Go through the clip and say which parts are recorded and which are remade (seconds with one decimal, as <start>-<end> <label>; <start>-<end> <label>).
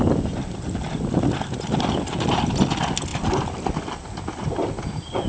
0.0-5.3 recorded